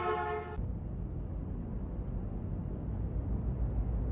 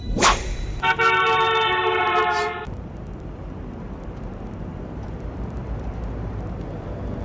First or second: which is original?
first